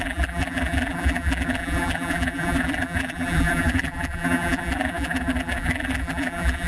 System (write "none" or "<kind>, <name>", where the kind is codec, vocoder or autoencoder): vocoder, BigVGAN v2